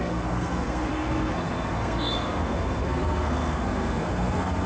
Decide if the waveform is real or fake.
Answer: fake